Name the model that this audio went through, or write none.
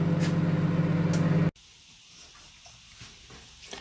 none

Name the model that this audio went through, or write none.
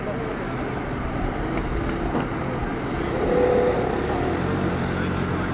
none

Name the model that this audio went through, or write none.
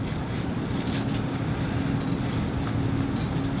none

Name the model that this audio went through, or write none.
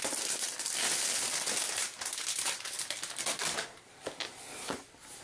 none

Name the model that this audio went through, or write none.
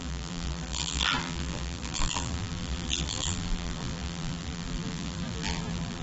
vocoder, BigVGAN v2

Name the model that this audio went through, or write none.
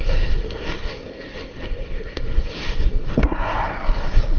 codec, SNAC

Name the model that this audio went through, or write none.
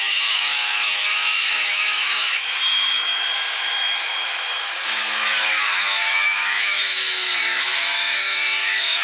autoencoder, DAC-VAE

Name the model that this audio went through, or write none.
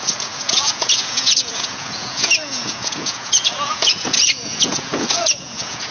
vocoder, Vocos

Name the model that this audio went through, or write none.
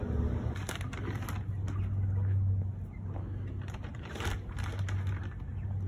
none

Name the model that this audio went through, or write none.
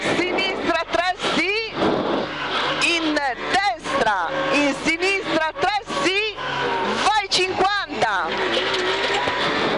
none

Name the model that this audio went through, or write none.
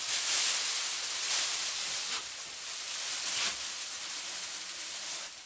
vocoder, BigVGAN v2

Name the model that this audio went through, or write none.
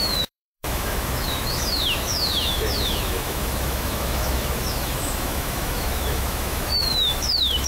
autoencoder, DAC-VAE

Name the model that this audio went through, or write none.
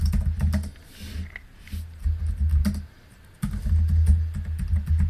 none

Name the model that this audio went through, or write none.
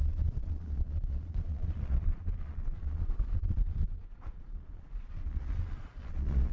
vocoder, Vocos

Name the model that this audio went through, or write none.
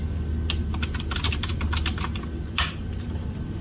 none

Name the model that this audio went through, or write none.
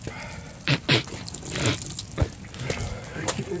none